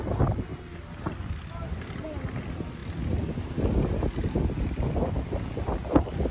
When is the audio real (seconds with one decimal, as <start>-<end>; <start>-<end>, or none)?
0.0-6.3